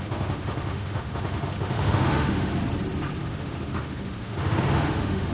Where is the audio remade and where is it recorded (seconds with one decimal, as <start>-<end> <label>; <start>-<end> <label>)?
0.0-2.5 remade; 2.5-3.2 recorded; 3.2-5.3 remade